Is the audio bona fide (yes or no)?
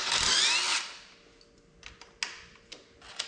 yes